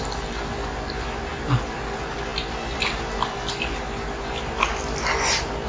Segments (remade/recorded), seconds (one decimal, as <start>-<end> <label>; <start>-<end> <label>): 0.0-5.7 recorded